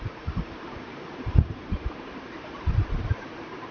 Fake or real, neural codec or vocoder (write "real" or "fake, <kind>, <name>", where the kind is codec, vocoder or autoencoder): fake, vocoder, BigVGAN v2